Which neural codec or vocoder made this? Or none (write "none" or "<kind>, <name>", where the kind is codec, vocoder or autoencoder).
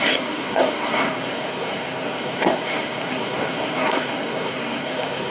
codec, SNAC